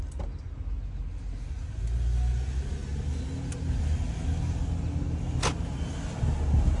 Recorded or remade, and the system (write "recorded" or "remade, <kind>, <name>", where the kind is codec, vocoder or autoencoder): recorded